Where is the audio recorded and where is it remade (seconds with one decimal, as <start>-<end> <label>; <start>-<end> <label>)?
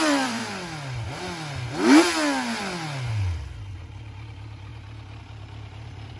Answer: 0.0-0.4 remade; 0.4-3.8 recorded; 3.8-4.7 remade; 4.7-5.2 recorded; 5.2-6.2 remade